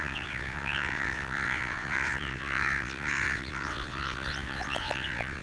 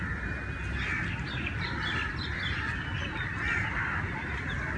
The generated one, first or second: first